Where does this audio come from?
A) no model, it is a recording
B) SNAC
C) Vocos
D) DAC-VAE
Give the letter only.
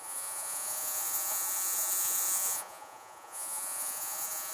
C